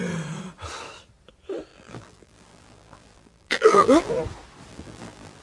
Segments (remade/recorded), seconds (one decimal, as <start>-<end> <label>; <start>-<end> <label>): 0.0-1.7 recorded; 1.7-4.1 remade; 4.1-4.7 recorded; 4.7-5.4 remade